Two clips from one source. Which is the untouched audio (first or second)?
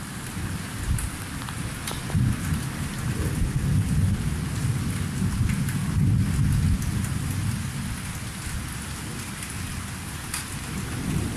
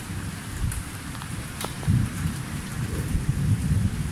first